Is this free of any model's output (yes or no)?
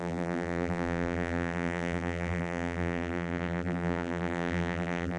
no